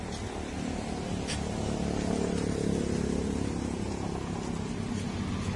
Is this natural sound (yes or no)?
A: yes